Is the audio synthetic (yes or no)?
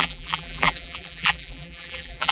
yes